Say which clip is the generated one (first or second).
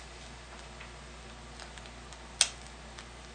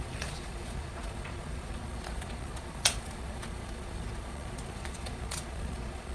second